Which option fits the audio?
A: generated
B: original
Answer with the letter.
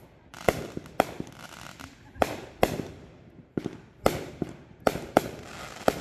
B